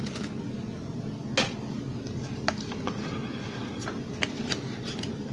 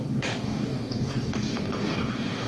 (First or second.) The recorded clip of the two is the first